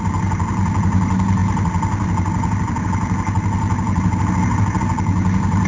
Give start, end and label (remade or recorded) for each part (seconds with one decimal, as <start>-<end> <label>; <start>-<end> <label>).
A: 0.0-5.7 recorded